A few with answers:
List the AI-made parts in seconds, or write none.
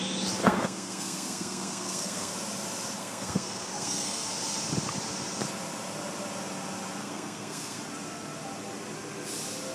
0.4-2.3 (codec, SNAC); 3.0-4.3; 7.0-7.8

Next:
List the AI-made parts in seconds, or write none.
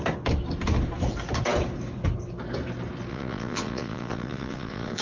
3.1-5.0 (vocoder, Vocos)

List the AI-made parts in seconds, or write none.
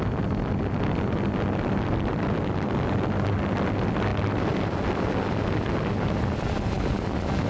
none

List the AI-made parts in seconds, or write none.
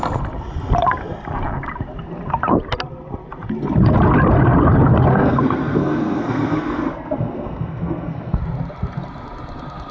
5.1-8.4 (codec, SNAC)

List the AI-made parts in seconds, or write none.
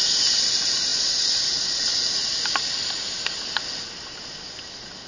none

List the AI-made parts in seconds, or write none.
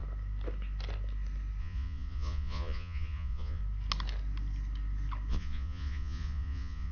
1.6-3.6 (vocoder, Vocos); 5.3-6.9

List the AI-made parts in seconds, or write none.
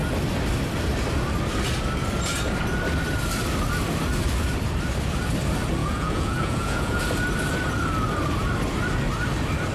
5.8-7.0 (vocoder, Vocos)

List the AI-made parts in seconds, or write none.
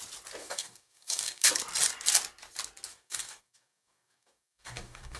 0.4-1.5 (codec, DAC); 2.9-5.2